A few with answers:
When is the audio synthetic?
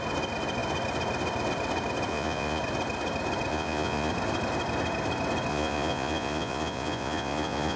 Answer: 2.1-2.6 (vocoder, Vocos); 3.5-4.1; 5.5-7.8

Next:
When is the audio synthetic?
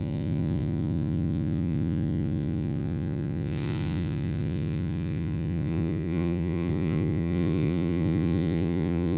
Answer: 0.0-9.2 (vocoder, Vocos)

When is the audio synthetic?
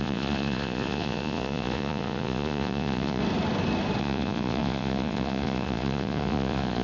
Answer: 0.0-3.2 (vocoder, Vocos); 4.0-6.8